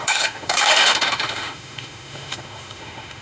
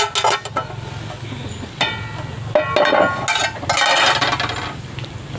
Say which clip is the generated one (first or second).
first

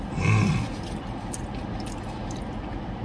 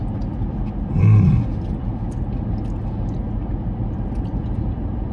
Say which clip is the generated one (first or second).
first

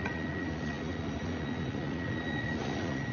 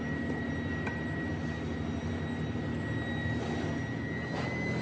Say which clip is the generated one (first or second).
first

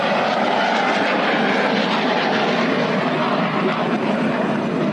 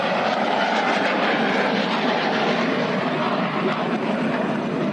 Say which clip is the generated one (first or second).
second